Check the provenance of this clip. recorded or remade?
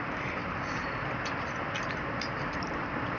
recorded